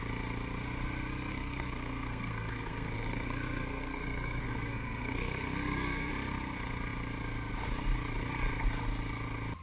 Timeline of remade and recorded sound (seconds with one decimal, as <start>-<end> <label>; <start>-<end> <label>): 0.0-1.3 recorded; 1.3-6.1 remade; 6.1-9.6 recorded